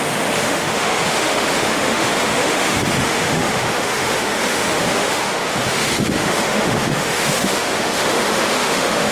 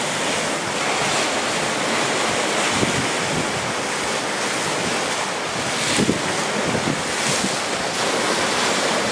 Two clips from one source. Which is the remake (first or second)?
first